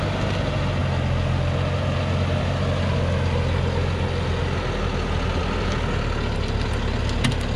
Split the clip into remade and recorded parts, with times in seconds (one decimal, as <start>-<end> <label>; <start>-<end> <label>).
0.0-7.6 recorded